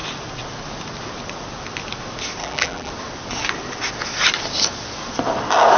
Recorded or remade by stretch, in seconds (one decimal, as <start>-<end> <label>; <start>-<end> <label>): 0.0-2.4 recorded; 2.4-2.9 remade; 2.9-5.8 recorded